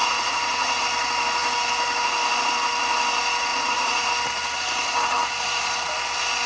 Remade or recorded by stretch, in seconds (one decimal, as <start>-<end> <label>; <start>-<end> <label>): 0.0-0.8 remade; 0.8-3.5 recorded; 3.5-4.1 remade; 4.1-6.5 recorded